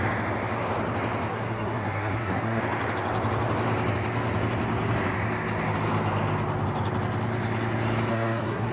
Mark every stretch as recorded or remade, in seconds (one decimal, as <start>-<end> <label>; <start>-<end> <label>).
0.0-1.3 recorded; 1.3-2.6 remade; 2.6-8.1 recorded; 8.1-8.7 remade